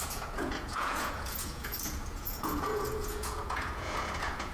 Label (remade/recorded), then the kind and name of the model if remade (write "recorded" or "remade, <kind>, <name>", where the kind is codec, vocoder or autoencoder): remade, vocoder, Vocos